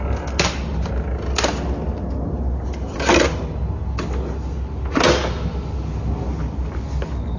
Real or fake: real